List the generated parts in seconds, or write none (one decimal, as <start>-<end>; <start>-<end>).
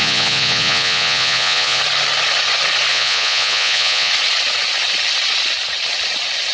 0.0-1.8; 2.9-4.1